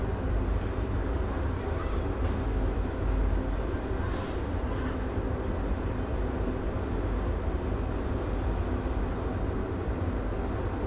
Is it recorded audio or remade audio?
recorded